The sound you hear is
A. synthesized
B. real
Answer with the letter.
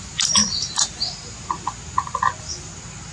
B